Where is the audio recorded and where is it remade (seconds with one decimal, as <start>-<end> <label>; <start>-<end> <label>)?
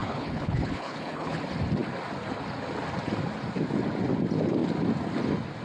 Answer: 0.0-1.4 remade; 1.4-5.6 recorded